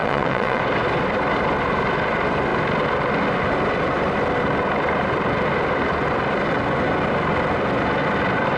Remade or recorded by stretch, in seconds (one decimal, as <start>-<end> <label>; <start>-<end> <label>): 0.0-0.6 remade; 0.6-8.6 recorded